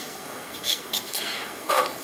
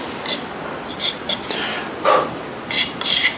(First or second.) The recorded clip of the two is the second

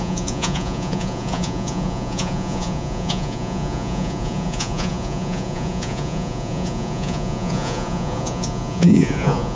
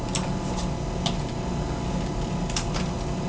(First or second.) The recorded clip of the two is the second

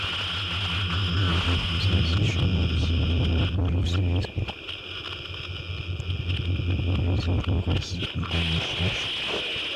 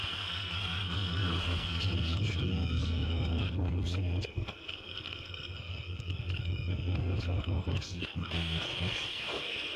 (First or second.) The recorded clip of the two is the first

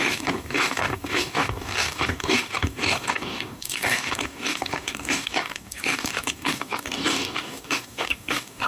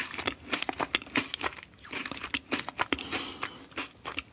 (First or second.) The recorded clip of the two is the second